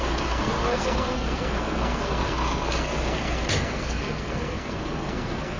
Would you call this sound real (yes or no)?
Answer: no